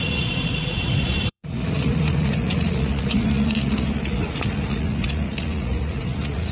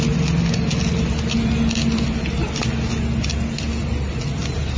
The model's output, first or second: first